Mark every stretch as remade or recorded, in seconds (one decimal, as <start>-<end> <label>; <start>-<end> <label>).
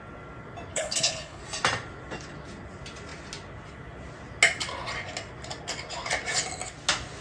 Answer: 0.0-0.7 recorded; 0.7-1.4 remade; 1.4-7.2 recorded